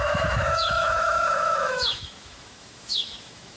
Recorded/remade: remade